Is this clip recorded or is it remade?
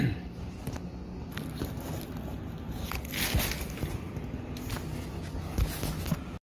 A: recorded